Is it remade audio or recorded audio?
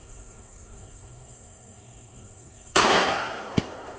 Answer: remade